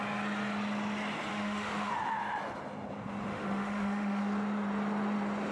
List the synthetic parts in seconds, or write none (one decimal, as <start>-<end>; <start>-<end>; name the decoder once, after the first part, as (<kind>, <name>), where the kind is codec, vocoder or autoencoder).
1.3-1.9 (autoencoder, DAC-VAE); 3.3-4.2

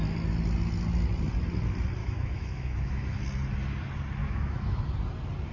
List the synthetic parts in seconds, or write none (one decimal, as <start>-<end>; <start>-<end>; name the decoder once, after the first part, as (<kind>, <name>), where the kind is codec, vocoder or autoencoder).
2.0-3.2 (autoencoder, DAC-VAE); 4.2-4.8

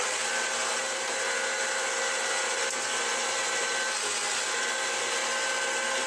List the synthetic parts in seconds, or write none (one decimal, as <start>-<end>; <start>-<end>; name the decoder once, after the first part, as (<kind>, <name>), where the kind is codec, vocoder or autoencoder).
none

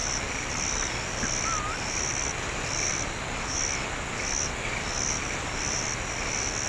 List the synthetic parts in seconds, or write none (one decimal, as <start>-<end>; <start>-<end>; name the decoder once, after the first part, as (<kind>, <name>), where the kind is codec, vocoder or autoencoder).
none

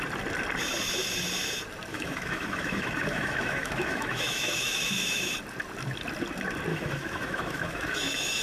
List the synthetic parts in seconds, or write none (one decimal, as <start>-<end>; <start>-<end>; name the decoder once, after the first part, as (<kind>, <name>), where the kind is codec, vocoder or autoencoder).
1.9-5.3 (autoencoder, DAC-VAE); 6.7-8.4